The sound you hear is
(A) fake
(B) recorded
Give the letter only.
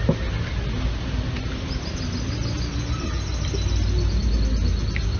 B